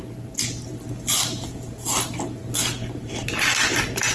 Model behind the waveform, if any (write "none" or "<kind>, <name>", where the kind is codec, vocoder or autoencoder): none